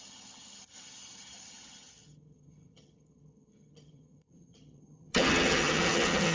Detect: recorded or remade remade